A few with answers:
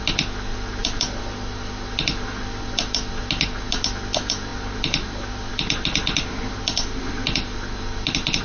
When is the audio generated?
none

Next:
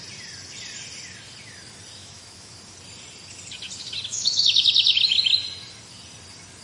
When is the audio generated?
2.0-2.6 (autoencoder, DAC-VAE); 4.1-4.6

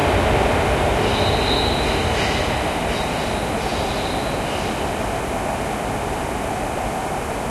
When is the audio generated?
none

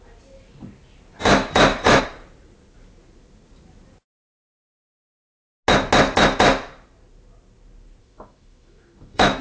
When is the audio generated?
1.2-2.0 (autoencoder, DAC-VAE); 8.0-9.4